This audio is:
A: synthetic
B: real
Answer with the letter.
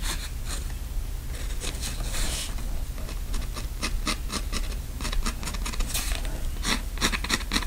B